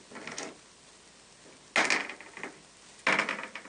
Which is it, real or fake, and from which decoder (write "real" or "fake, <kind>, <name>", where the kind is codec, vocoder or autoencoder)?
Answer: real